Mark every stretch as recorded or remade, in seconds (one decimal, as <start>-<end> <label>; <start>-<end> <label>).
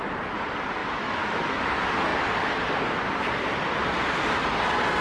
0.0-0.8 recorded; 0.8-1.6 remade; 1.6-5.0 recorded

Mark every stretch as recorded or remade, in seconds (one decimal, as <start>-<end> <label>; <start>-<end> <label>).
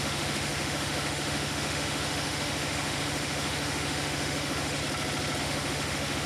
0.0-4.8 remade; 4.8-5.4 recorded; 5.4-6.3 remade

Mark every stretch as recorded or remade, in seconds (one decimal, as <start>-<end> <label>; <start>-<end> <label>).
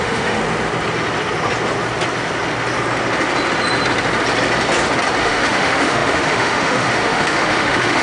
0.0-0.4 remade; 0.4-5.2 recorded; 5.2-8.0 remade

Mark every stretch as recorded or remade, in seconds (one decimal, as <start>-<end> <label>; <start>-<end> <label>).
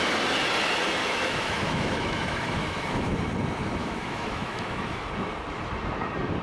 0.0-1.0 recorded; 1.0-3.1 remade; 3.1-3.8 recorded; 3.8-5.1 remade; 5.1-6.4 recorded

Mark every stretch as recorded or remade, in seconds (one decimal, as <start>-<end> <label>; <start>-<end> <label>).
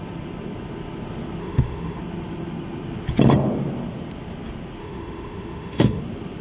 0.0-1.4 recorded; 1.4-2.0 remade; 2.0-4.8 recorded; 4.8-6.0 remade; 6.0-6.4 recorded